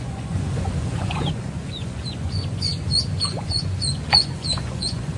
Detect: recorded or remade remade